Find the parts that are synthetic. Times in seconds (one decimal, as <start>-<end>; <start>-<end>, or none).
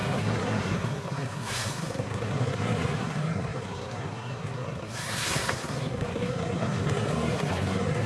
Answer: 0.0-8.1